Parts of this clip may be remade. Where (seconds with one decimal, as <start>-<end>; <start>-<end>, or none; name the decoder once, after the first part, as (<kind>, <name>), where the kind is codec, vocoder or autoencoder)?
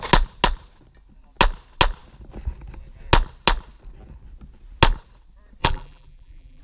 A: 5.6-6.6 (vocoder, BigVGAN v2)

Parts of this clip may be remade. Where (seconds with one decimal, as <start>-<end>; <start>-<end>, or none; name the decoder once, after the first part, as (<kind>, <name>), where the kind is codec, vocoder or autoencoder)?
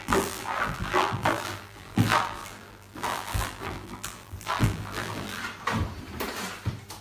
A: 0.0-5.4 (vocoder, BigVGAN v2)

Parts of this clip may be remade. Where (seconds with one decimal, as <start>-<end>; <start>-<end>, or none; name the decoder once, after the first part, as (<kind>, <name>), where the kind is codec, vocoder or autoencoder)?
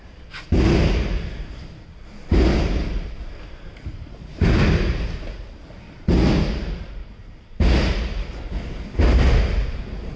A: 2.8-5.5 (vocoder, BigVGAN v2); 7.0-7.9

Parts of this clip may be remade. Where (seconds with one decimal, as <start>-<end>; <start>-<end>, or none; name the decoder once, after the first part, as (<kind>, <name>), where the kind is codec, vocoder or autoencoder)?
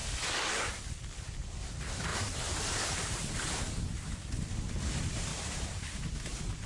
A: 0.0-0.8 (vocoder, BigVGAN v2); 2.1-3.8; 5.3-6.1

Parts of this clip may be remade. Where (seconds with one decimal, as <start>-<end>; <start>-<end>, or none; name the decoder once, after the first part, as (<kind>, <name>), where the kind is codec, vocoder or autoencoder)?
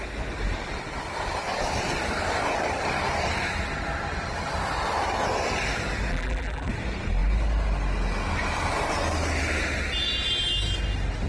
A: 6.1-6.7 (vocoder, BigVGAN v2)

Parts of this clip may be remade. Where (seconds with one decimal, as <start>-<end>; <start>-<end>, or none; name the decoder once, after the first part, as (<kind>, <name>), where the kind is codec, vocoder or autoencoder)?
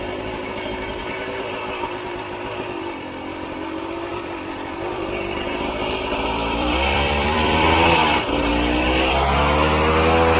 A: 1.0-2.1 (vocoder, BigVGAN v2); 4.1-8.5